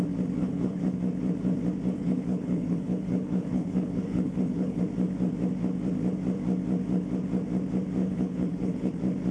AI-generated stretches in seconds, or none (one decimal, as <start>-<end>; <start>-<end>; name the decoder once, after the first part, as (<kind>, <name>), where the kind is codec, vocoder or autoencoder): 0.4-1.0 (codec, HILCodec); 2.0-4.8; 8.0-8.9